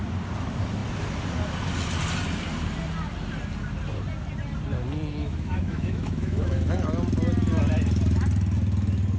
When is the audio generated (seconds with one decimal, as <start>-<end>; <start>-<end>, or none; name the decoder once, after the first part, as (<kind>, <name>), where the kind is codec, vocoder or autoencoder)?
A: 5.2-6.7 (autoencoder, DAC-VAE)